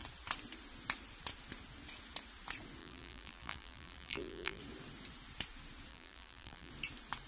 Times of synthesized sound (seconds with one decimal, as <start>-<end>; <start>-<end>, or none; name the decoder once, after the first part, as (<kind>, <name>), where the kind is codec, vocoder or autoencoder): 2.8-4.6 (vocoder, BigVGAN v2); 5.9-6.7